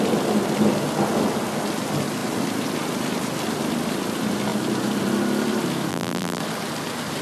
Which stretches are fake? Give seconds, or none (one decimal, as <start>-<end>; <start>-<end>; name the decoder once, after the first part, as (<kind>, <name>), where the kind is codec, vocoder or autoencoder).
5.9-6.4 (vocoder, BigVGAN v2)